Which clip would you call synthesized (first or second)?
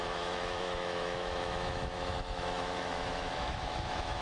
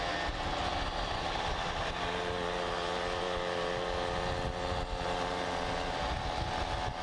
first